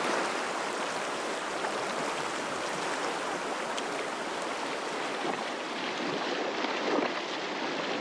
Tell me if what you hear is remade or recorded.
recorded